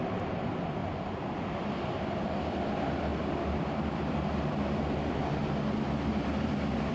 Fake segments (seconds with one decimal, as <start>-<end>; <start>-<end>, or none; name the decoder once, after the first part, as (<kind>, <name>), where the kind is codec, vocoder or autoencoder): 0.0-0.8 (vocoder, BigVGAN v2); 1.4-3.1; 4.8-5.4